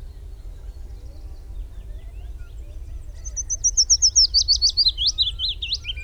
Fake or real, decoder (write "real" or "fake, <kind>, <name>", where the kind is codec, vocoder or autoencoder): real